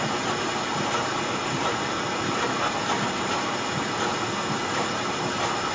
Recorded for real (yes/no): yes